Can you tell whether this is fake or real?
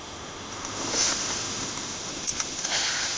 fake